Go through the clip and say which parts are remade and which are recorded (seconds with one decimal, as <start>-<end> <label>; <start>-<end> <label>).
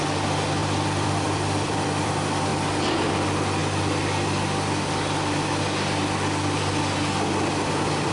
0.0-0.6 recorded; 0.6-2.1 remade; 2.1-8.1 recorded